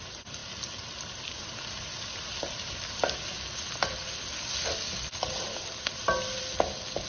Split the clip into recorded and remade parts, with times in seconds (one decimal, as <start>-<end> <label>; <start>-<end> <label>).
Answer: 0.0-7.1 recorded